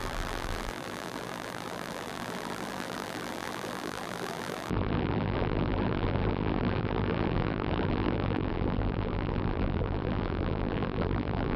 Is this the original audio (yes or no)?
no